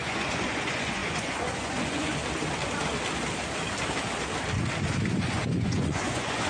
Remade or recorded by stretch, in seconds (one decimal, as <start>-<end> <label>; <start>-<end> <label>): 0.0-2.2 remade; 2.2-5.2 recorded; 5.2-6.5 remade